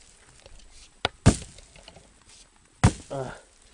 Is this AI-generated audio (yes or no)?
no